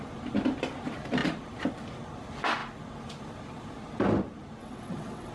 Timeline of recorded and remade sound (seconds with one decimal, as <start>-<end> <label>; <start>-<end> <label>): 0.0-4.6 recorded; 4.6-5.3 remade

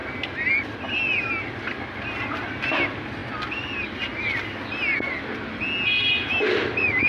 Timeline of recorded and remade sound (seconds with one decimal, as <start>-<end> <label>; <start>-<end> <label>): 0.0-7.1 recorded

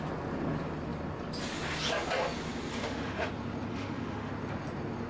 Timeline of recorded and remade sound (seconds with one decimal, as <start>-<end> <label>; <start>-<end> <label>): 0.0-2.7 recorded; 2.7-3.3 remade; 3.3-3.7 recorded; 3.7-4.3 remade; 4.3-5.1 recorded

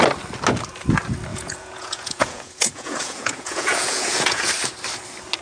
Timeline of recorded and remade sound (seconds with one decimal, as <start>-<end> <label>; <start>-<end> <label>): 0.0-1.3 recorded; 1.3-4.5 remade; 4.5-5.4 recorded

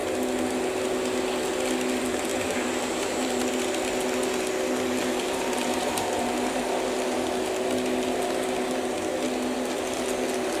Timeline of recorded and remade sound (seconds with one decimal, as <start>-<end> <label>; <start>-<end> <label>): 0.0-2.3 recorded; 2.3-3.4 remade; 3.4-5.0 recorded; 5.0-6.5 remade; 6.5-10.6 recorded